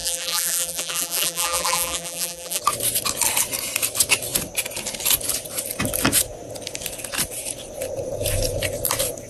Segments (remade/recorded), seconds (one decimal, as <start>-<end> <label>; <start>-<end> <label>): 0.0-2.6 remade; 2.6-9.3 recorded